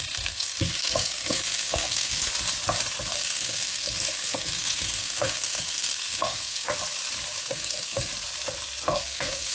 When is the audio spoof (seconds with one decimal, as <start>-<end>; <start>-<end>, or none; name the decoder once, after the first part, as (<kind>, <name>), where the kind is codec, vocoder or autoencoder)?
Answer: 0.0-2.2 (codec, SNAC); 3.1-6.7; 7.4-8.1; 8.9-9.5